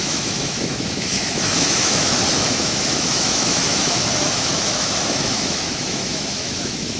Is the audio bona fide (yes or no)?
no